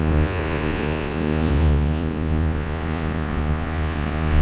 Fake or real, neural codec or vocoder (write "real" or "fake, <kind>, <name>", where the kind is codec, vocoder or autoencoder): fake, vocoder, Vocos